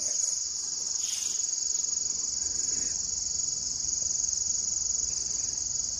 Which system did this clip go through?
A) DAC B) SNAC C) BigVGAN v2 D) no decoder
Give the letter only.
C